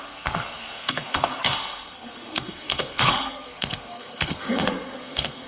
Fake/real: fake